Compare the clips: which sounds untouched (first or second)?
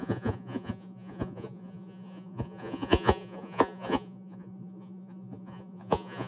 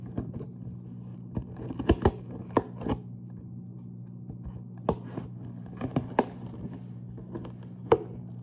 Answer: second